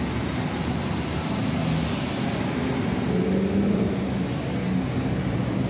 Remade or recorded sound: recorded